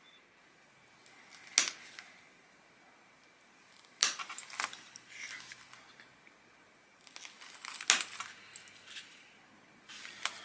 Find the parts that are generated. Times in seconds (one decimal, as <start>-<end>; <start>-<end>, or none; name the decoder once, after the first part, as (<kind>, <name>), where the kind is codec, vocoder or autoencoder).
none